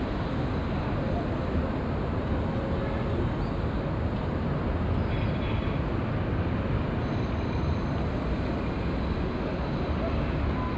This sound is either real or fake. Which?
real